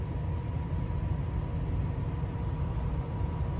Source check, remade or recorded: recorded